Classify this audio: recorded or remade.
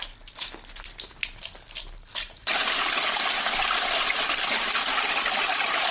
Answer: recorded